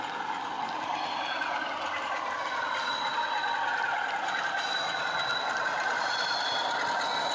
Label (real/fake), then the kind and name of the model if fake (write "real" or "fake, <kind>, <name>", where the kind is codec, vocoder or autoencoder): real